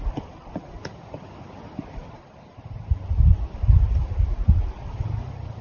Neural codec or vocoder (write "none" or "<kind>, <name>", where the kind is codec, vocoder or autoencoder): none